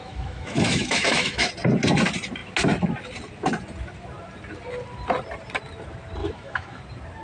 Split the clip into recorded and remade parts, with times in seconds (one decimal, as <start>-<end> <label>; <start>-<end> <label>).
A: 0.0-1.5 remade; 1.5-6.2 recorded; 6.2-6.8 remade; 6.8-7.2 recorded